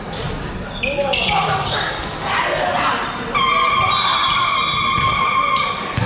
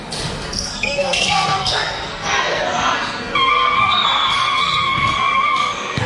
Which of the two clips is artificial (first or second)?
second